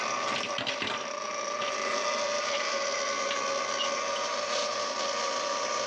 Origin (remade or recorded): recorded